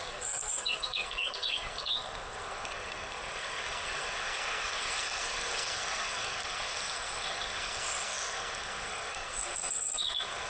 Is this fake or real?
fake